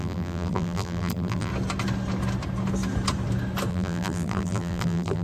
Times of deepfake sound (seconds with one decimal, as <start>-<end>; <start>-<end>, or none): 0.0-1.5; 3.7-5.2